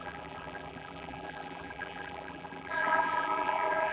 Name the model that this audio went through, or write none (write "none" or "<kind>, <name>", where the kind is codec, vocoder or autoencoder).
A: vocoder, BigVGAN v2